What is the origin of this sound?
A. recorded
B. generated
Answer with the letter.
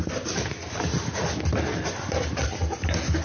A